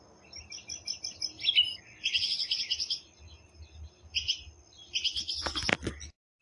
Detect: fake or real real